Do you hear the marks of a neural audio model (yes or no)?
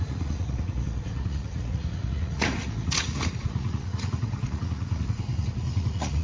yes